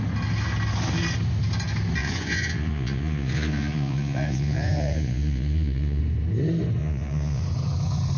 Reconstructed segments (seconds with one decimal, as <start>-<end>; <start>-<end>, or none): 2.0-6.0; 6.8-7.4